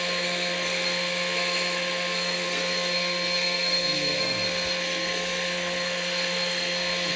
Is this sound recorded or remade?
remade